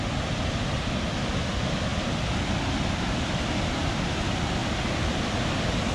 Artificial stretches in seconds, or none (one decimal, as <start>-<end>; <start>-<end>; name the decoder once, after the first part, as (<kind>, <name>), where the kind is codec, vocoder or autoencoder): none